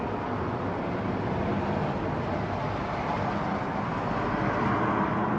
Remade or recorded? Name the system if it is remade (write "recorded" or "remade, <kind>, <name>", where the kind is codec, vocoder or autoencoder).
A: recorded